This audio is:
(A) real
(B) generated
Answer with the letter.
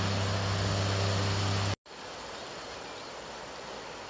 A